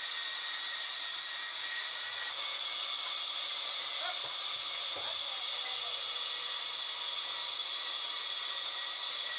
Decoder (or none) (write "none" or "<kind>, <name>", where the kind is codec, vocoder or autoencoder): none